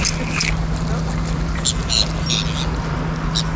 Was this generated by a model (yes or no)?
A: no